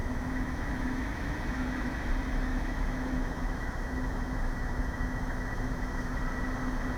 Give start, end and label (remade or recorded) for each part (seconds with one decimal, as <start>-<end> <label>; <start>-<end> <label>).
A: 0.0-2.1 remade; 2.1-2.5 recorded; 2.5-6.2 remade; 6.2-7.0 recorded